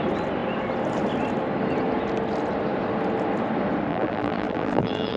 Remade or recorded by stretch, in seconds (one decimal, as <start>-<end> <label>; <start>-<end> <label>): 0.0-3.9 recorded; 3.9-5.2 remade